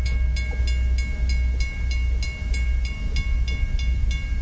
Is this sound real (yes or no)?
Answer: yes